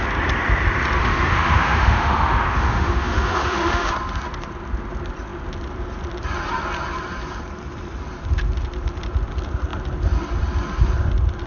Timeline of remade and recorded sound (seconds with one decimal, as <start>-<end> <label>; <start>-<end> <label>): 0.0-1.0 recorded; 1.0-3.9 remade; 3.9-11.5 recorded